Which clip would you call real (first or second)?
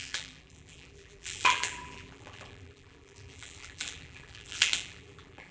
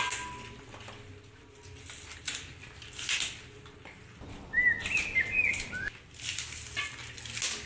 second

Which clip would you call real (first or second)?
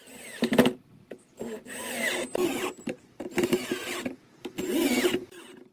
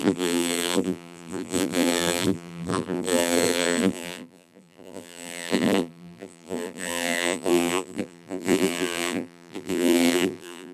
first